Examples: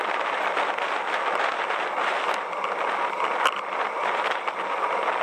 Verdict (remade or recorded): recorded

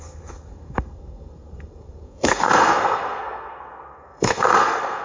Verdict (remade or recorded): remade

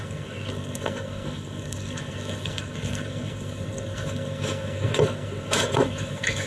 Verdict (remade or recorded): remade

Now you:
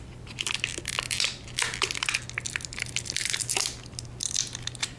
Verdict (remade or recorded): recorded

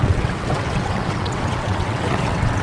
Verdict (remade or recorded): remade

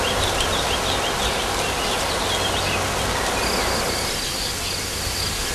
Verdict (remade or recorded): recorded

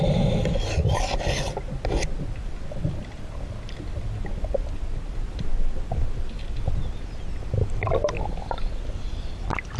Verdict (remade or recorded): recorded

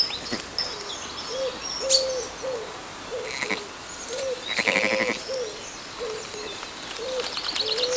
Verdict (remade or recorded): recorded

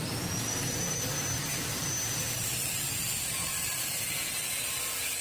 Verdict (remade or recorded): recorded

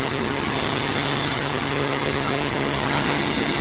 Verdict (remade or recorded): remade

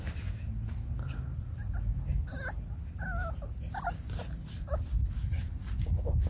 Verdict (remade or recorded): recorded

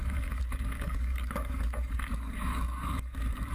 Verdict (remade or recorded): remade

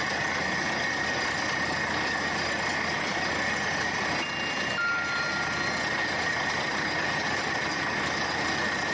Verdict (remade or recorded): recorded